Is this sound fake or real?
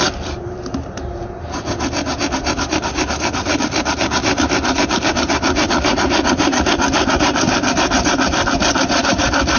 fake